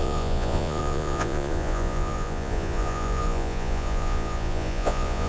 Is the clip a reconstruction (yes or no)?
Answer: yes